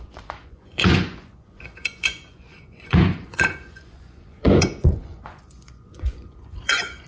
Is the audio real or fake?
fake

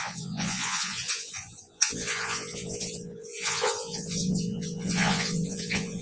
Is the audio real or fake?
fake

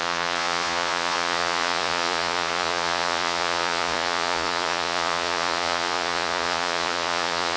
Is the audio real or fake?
fake